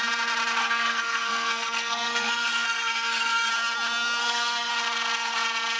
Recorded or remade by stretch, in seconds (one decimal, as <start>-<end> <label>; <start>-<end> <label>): 0.0-0.6 recorded; 0.6-3.5 remade; 3.5-4.2 recorded; 4.2-4.7 remade; 4.7-5.8 recorded